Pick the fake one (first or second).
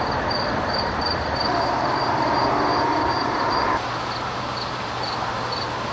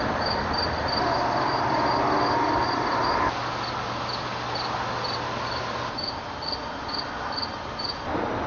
first